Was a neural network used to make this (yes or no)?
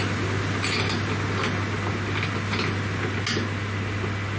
no